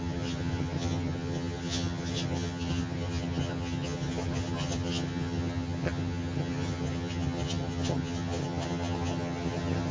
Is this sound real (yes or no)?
no